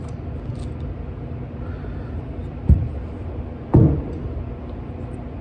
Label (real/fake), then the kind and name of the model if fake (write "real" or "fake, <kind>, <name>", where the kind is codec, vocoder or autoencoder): real